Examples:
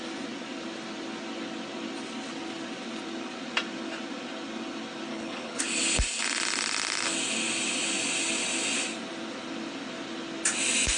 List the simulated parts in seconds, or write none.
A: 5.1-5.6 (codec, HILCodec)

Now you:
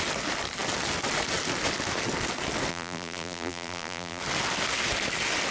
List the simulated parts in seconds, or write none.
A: 2.7-4.2 (vocoder, BigVGAN v2)

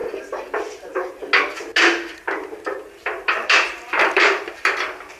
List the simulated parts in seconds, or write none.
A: 0.0-1.2 (vocoder, BigVGAN v2); 3.0-4.4